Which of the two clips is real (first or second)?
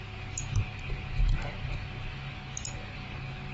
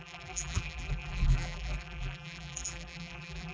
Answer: first